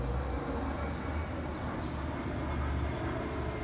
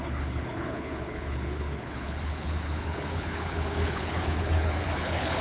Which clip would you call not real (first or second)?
second